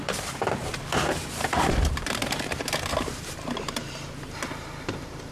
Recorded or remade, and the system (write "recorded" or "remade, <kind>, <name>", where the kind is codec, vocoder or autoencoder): remade, vocoder, BigVGAN v2